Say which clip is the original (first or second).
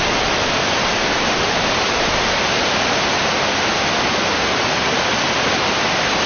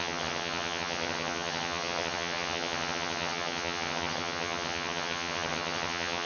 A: first